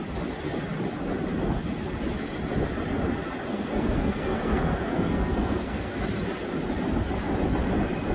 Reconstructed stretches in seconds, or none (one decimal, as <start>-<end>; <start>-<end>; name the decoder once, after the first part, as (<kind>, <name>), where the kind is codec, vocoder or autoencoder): 3.5-6.0 (codec, SNAC)